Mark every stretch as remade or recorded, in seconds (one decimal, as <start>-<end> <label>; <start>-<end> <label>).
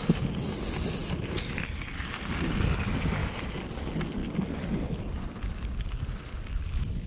0.0-7.1 recorded